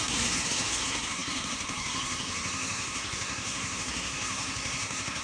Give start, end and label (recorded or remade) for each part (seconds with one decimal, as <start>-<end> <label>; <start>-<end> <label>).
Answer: 0.0-5.2 remade